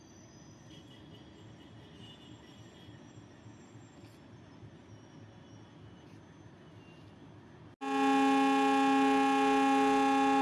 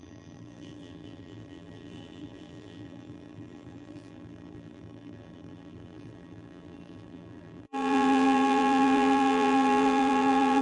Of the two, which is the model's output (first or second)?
second